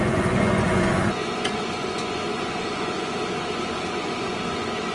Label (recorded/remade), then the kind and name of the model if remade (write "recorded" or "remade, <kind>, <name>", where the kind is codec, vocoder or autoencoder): remade, vocoder, Vocos